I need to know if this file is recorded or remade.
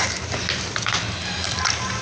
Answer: recorded